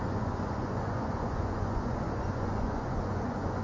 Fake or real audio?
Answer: fake